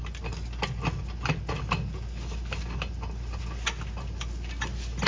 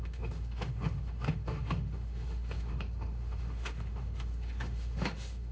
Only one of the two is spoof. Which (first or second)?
second